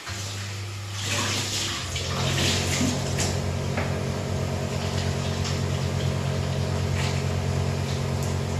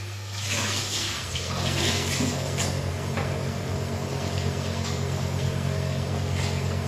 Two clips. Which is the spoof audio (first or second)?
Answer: second